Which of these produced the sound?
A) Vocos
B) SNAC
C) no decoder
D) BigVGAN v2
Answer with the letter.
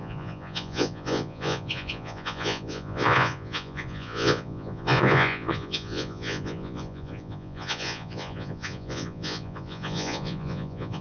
A